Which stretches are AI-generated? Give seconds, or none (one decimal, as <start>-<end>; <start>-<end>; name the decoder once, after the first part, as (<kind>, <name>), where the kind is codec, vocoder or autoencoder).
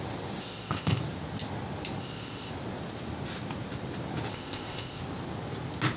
0.4-1.0 (codec, ZipCodec); 2.0-2.5; 4.3-5.0